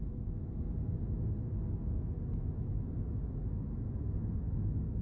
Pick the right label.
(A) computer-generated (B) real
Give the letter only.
B